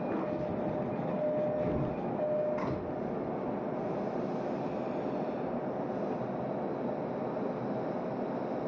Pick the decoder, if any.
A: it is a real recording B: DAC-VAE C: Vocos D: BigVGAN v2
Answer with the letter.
A